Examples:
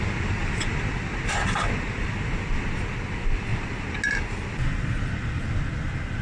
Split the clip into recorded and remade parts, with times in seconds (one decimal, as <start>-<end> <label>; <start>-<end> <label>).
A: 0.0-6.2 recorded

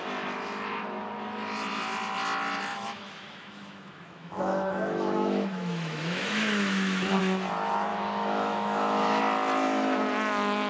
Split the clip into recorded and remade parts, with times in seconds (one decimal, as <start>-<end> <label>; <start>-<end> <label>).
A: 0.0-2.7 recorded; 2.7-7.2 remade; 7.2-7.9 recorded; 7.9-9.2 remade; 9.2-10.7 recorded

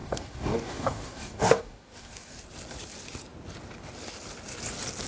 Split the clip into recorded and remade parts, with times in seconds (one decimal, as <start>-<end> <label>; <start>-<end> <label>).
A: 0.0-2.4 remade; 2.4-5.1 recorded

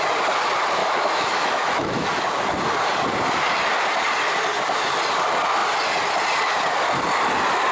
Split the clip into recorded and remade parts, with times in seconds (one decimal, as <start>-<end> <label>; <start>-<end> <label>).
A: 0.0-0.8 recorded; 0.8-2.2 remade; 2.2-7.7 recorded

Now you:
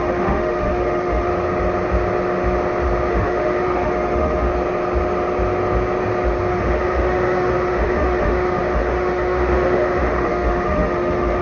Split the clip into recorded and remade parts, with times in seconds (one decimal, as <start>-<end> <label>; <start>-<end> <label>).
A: 0.0-1.3 remade; 1.3-3.1 recorded; 3.1-4.5 remade; 4.5-6.5 recorded; 6.5-11.4 remade

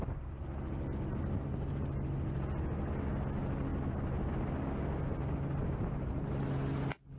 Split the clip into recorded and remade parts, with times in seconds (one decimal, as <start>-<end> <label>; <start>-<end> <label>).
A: 0.0-7.2 recorded

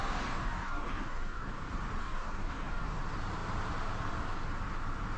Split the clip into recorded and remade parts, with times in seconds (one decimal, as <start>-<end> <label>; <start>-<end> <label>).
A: 0.0-1.5 remade; 1.5-2.0 recorded; 2.0-3.0 remade; 3.0-5.2 recorded

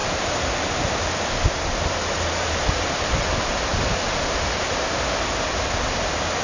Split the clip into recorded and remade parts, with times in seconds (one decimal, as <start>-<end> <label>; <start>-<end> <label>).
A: 0.0-6.4 recorded